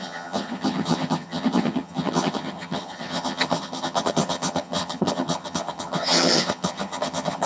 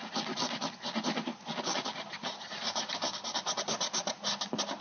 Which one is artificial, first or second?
first